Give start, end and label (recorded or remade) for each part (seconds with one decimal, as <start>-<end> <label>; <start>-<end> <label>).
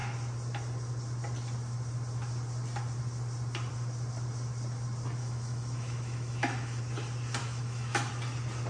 0.0-5.2 recorded; 5.2-6.8 remade; 6.8-7.4 recorded; 7.4-8.1 remade; 8.1-8.7 recorded